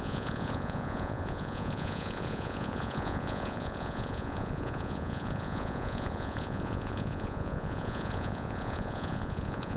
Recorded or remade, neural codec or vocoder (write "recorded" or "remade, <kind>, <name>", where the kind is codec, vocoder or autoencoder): remade, vocoder, Vocos